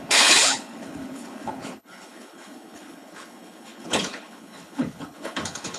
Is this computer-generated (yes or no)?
yes